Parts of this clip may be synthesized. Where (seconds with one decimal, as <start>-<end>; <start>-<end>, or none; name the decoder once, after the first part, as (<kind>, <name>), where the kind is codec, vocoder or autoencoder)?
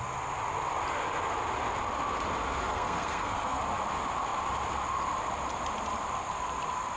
2.7-3.6 (codec, SNAC)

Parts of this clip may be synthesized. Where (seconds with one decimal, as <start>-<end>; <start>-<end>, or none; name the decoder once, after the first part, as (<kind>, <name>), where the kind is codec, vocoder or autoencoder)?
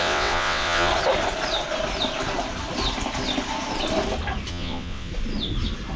0.0-0.9 (vocoder, WaveNeXt); 4.5-5.1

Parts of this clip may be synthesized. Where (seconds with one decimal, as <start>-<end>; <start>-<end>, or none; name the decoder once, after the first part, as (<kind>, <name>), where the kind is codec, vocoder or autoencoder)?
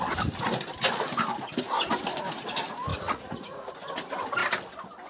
2.9-3.7 (vocoder, Vocos)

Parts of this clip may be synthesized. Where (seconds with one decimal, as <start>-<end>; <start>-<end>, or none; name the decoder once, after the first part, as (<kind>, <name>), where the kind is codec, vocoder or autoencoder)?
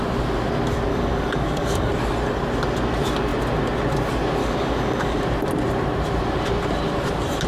0.9-1.9 (codec, DAC); 4.4-5.2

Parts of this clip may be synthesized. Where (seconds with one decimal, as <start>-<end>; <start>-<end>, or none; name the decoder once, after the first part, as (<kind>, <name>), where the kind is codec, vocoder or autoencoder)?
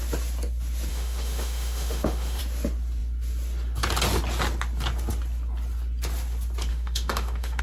0.9-2.4 (autoencoder, DAC-VAE); 6.7-7.6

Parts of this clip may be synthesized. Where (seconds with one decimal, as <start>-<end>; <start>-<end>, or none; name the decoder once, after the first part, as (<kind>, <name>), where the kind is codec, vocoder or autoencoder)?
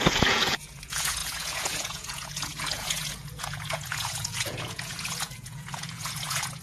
0.0-6.6 (vocoder, Vocos)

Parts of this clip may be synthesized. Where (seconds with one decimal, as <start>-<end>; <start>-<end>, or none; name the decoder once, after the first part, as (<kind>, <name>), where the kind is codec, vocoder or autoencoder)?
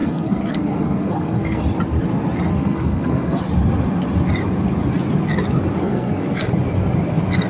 0.0-1.6 (codec, SNAC); 2.5-3.4; 5.8-6.5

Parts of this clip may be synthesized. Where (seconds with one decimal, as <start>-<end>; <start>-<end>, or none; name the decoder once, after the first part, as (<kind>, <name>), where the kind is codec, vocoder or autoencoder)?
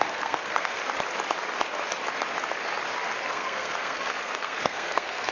0.0-0.8 (codec, SNAC); 3.3-5.3